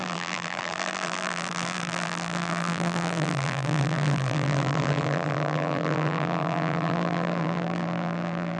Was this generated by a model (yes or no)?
yes